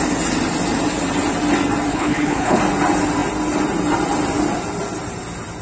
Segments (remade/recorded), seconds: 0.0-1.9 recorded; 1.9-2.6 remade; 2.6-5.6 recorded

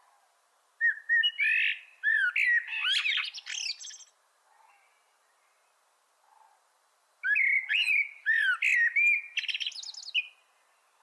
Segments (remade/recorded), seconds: 0.0-11.0 recorded